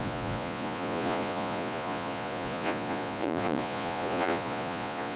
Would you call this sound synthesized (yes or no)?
yes